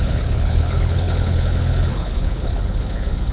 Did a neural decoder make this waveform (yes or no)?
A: yes